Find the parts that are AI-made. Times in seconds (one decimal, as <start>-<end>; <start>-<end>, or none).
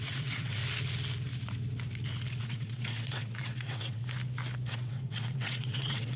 0.0-0.6; 2.4-4.0; 4.7-6.2